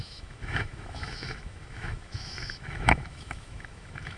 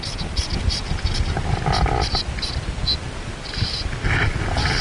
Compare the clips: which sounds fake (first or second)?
first